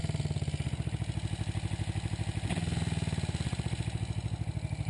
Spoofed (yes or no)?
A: no